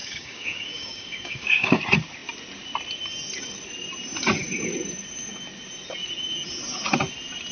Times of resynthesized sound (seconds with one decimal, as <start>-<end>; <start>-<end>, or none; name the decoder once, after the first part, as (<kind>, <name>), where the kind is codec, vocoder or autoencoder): 0.0-1.8 (codec, DAC)